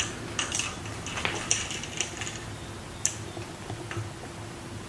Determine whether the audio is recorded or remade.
recorded